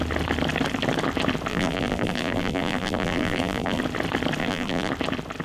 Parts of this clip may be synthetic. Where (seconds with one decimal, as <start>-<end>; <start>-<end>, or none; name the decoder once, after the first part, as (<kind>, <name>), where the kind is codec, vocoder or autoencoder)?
1.5-3.8 (vocoder, BigVGAN v2); 4.4-4.9